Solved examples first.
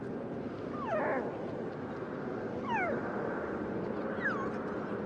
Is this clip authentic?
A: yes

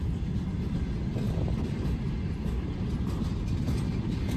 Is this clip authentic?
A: yes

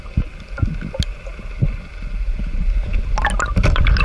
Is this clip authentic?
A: yes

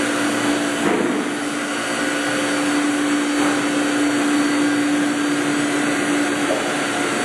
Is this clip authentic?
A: yes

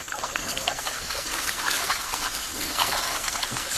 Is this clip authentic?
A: no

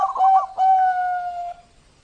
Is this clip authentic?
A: yes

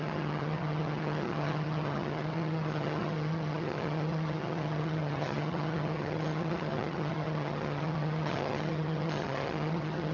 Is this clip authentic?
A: no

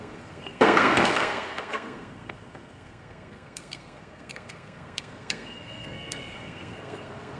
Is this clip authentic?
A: no